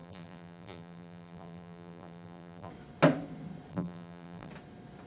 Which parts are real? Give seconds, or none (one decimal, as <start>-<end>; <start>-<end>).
2.7-3.7; 4.5-5.1